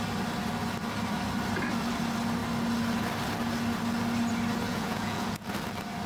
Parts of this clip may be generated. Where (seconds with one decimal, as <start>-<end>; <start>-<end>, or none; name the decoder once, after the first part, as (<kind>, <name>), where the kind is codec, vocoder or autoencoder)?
4.7-5.5 (vocoder, Vocos)